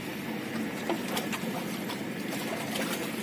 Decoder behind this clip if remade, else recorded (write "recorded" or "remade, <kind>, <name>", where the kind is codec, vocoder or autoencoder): recorded